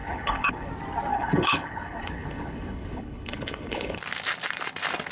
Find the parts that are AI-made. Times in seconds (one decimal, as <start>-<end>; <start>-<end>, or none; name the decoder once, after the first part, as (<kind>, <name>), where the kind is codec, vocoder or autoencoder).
0.0-0.7 (codec, HILCodec); 1.1-4.0